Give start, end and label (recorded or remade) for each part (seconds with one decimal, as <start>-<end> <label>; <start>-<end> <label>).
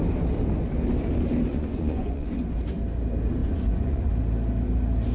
0.0-1.5 recorded; 1.5-2.3 remade; 2.3-3.4 recorded; 3.4-4.1 remade; 4.1-5.1 recorded